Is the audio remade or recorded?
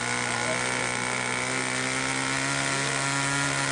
recorded